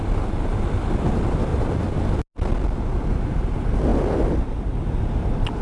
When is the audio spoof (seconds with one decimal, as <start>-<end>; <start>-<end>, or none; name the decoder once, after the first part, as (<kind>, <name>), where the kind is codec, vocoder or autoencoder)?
none